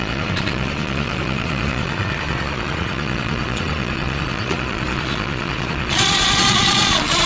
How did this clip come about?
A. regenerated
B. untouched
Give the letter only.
A